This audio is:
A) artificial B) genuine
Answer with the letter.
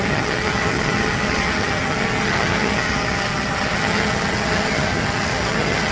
A